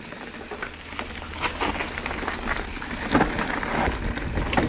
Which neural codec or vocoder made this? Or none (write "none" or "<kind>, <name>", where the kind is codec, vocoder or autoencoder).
none